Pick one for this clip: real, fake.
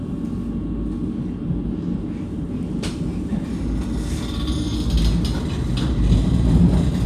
real